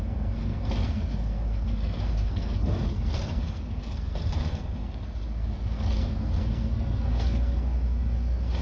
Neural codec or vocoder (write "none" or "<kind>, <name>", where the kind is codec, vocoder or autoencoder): codec, SNAC